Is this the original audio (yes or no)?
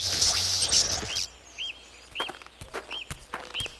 yes